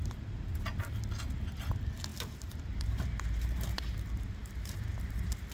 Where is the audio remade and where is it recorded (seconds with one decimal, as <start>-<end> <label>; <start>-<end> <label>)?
0.0-1.0 remade; 1.0-2.1 recorded; 2.1-5.5 remade